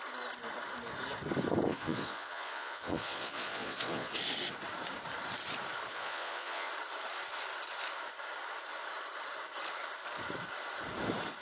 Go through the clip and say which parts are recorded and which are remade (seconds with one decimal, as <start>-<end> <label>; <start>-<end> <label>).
0.0-1.7 recorded; 1.7-4.1 remade; 4.1-5.9 recorded; 5.9-6.7 remade; 6.7-11.4 recorded